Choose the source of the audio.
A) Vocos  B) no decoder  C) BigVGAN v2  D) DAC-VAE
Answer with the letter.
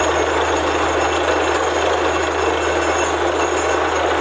B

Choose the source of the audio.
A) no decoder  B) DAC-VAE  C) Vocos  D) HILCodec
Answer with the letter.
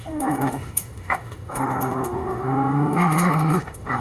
B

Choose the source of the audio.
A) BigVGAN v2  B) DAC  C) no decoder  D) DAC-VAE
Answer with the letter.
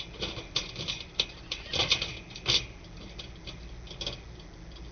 C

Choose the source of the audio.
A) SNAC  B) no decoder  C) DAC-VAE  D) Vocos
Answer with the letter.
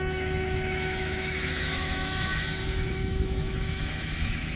C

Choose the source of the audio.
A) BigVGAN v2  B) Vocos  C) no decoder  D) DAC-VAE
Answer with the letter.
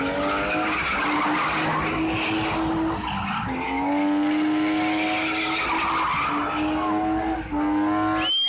C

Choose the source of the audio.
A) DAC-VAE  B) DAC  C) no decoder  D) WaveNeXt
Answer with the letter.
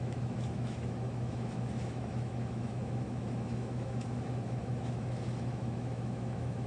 A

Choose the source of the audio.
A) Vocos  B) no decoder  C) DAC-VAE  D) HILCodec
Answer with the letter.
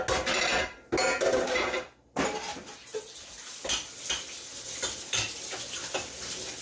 B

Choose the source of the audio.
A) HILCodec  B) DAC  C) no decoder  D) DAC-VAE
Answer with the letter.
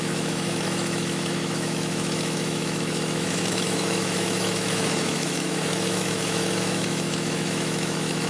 D